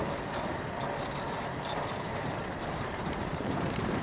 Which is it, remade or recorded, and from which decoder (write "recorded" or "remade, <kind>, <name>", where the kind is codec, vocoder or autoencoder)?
remade, vocoder, BigVGAN v2